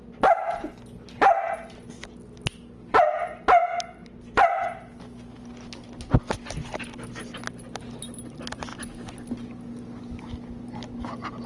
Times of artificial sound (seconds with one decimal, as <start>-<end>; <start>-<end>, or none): none